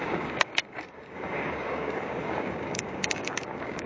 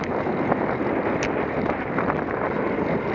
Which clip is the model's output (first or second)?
first